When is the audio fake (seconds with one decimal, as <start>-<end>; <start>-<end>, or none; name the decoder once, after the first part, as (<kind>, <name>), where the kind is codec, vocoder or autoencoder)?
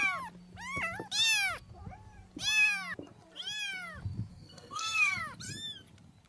4.3-5.2 (codec, SNAC)